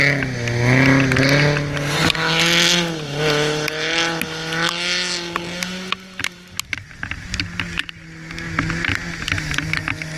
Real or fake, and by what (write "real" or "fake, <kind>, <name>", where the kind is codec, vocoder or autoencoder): real